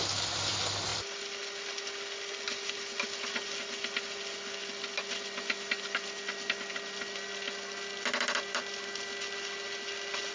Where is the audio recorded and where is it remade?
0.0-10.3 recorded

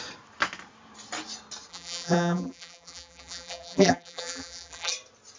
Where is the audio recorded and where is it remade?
0.0-1.7 recorded; 1.7-4.9 remade; 4.9-5.4 recorded

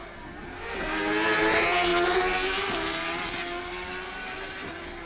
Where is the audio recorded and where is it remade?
0.0-1.9 recorded; 1.9-5.1 remade

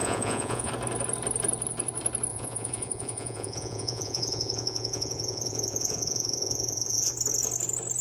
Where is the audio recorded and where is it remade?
0.0-0.7 remade; 0.7-2.3 recorded; 2.3-7.1 remade; 7.1-8.0 recorded

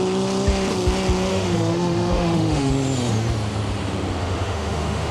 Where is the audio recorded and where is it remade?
0.0-1.3 recorded; 1.3-2.7 remade; 2.7-4.2 recorded; 4.2-5.1 remade

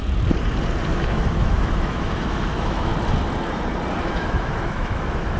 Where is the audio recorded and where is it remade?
0.0-0.9 recorded; 0.9-2.9 remade; 2.9-4.0 recorded; 4.0-5.4 remade

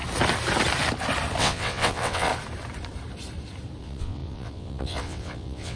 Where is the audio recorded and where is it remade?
0.0-1.4 recorded; 1.4-2.3 remade; 2.3-3.8 recorded; 3.8-5.8 remade